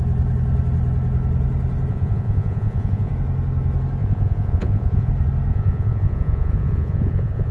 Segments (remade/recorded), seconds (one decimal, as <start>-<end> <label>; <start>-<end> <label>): 0.0-1.9 recorded; 1.9-3.1 remade; 3.1-4.0 recorded; 4.0-5.1 remade; 5.1-5.5 recorded; 5.5-7.5 remade